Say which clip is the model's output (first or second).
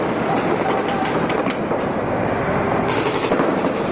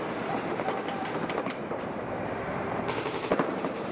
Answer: second